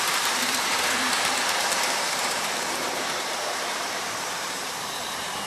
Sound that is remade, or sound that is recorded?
remade